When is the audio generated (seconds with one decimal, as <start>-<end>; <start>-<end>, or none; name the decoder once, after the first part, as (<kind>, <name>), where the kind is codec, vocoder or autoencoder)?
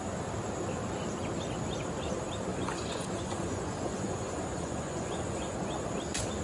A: 2.5-5.7 (vocoder, Vocos)